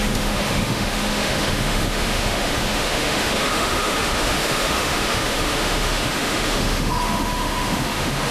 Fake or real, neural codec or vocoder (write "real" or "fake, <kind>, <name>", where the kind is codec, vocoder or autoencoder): fake, autoencoder, DAC-VAE